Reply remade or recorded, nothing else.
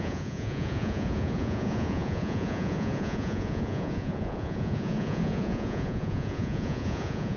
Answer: remade